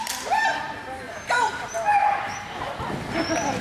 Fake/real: real